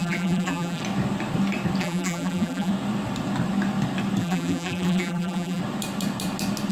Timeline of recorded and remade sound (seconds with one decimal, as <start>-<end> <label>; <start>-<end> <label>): 0.0-0.8 remade; 0.8-1.8 recorded; 1.8-2.7 remade; 2.7-4.2 recorded; 4.2-5.6 remade; 5.6-6.7 recorded